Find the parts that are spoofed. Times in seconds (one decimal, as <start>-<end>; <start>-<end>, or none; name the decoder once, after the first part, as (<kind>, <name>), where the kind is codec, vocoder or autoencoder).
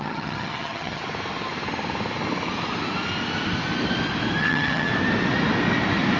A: 0.0-1.0 (vocoder, HiFi-GAN); 4.4-4.9